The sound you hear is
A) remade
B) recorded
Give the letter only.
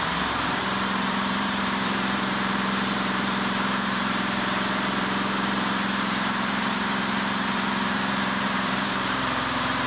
A